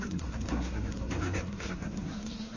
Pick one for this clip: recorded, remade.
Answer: remade